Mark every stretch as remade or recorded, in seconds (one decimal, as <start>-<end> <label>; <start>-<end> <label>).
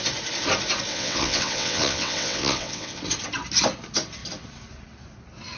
0.0-0.9 recorded; 0.9-3.0 remade; 3.0-5.6 recorded